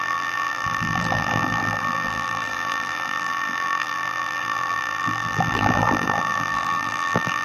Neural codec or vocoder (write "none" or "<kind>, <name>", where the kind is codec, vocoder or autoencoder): vocoder, BigVGAN v2